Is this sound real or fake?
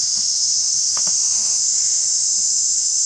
fake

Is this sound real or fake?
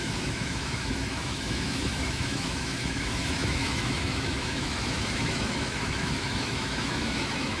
fake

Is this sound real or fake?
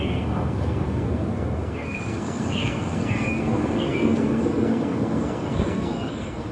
fake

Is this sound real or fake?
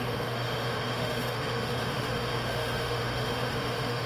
fake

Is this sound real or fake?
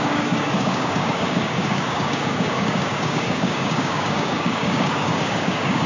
fake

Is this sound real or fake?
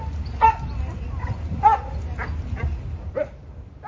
real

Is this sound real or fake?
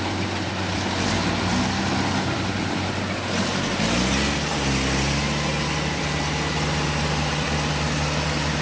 real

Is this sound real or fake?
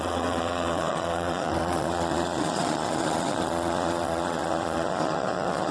fake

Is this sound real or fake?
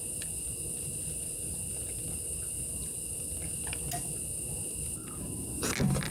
real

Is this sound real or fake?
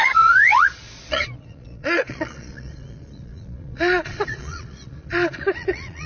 fake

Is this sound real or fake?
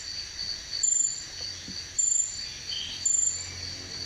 real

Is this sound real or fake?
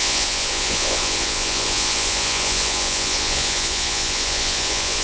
fake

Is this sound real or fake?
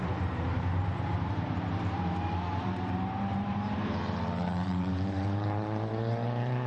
fake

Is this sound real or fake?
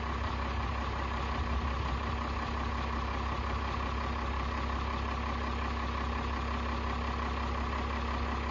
real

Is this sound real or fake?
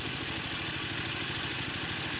real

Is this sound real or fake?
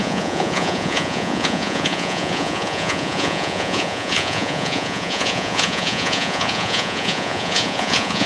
fake